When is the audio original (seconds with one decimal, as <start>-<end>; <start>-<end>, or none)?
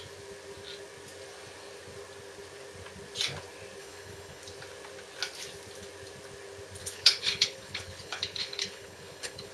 0.0-3.8; 4.4-6.8